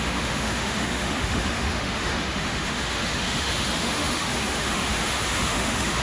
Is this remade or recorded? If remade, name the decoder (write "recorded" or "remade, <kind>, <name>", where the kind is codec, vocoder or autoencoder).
remade, autoencoder, DAC-VAE